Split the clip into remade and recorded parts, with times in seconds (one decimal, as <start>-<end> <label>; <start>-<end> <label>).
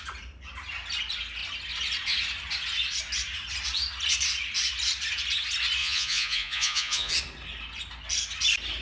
0.0-5.8 recorded; 5.8-7.1 remade; 7.1-8.8 recorded